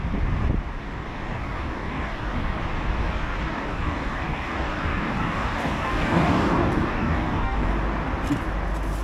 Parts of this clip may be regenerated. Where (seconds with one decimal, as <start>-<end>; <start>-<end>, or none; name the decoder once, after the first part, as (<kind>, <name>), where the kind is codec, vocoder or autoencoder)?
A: 0.8-2.6 (codec, DAC); 3.0-7.7